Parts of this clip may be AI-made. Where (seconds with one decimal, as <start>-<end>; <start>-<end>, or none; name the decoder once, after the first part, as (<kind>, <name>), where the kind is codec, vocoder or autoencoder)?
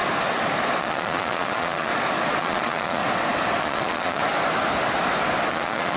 0.8-1.9 (vocoder, Vocos); 2.4-3.0; 3.6-4.2; 5.5-6.0